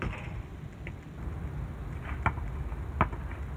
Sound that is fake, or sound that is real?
real